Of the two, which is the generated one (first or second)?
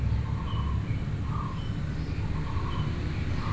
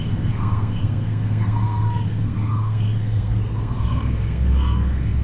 second